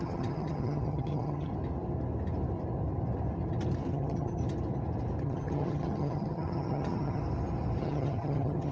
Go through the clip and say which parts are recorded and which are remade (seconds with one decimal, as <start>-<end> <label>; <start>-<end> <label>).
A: 0.0-1.5 remade; 1.5-3.9 recorded; 3.9-4.4 remade; 4.4-5.2 recorded; 5.2-7.2 remade; 7.2-7.8 recorded; 7.8-8.7 remade